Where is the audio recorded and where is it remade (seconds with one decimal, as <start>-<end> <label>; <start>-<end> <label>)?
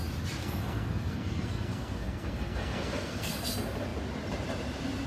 0.0-0.4 recorded; 0.4-3.5 remade; 3.5-5.1 recorded